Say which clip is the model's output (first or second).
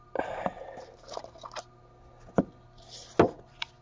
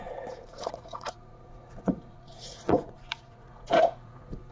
second